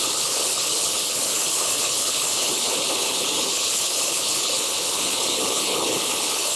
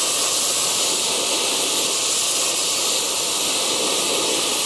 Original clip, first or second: second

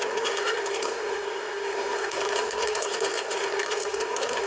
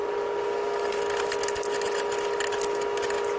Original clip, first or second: second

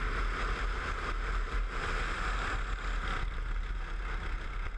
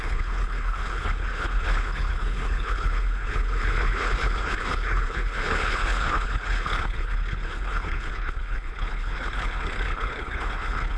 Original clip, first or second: first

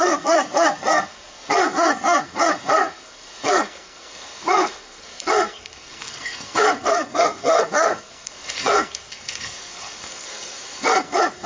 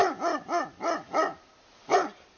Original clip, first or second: second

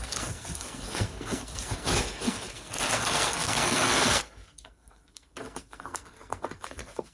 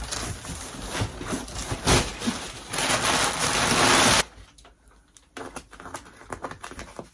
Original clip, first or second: second